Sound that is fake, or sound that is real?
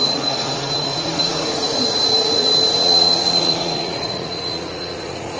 fake